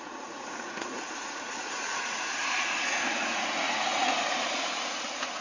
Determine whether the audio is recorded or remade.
remade